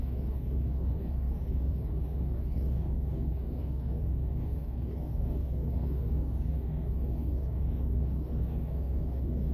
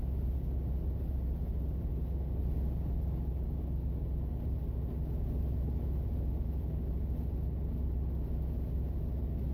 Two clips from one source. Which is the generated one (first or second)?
first